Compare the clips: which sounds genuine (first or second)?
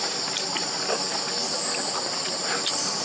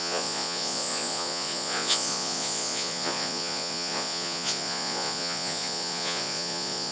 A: first